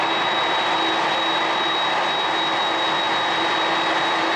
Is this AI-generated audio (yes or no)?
no